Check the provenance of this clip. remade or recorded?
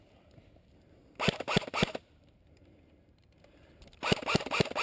remade